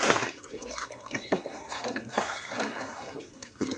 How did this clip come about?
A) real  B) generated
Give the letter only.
B